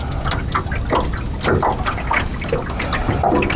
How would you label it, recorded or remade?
recorded